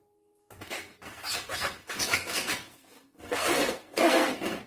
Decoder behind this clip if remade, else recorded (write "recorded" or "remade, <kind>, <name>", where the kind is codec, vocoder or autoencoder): remade, codec, SNAC